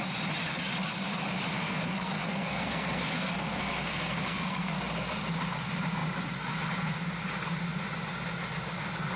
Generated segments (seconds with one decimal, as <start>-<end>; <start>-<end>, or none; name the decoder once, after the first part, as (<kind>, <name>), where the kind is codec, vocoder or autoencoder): 1.6-4.8 (codec, SNAC)